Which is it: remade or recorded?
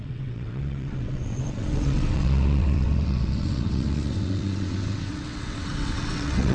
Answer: remade